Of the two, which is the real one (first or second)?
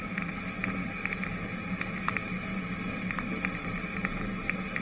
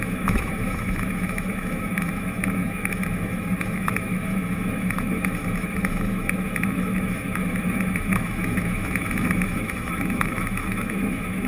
first